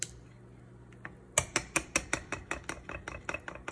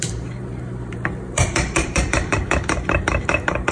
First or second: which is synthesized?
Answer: second